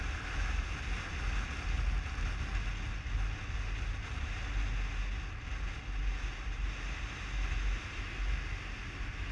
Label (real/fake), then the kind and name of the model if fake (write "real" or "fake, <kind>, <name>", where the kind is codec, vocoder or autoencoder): real